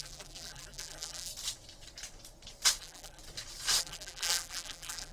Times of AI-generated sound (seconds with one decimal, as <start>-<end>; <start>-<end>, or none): 0.0-1.3; 2.8-3.2; 3.8-5.1

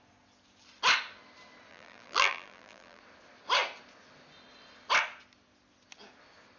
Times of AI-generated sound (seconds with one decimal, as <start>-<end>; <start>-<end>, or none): 1.7-3.0